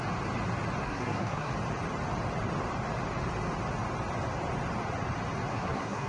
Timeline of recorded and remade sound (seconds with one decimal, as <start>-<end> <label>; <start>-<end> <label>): 0.0-0.8 recorded; 0.8-1.5 remade; 1.5-5.5 recorded; 5.5-6.1 remade

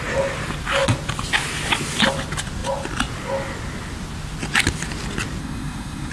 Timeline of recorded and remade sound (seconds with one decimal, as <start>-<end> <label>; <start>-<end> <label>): 0.0-5.4 recorded; 5.4-6.1 remade